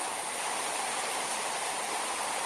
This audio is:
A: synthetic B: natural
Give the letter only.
B